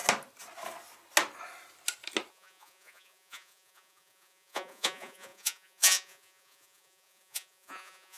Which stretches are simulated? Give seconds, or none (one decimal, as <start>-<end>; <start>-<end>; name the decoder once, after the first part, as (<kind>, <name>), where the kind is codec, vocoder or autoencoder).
2.3-8.2 (vocoder, Vocos)